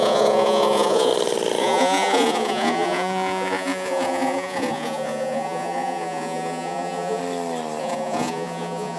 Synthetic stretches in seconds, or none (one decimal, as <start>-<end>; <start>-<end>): 0.0-1.1; 1.6-7.2; 7.8-9.0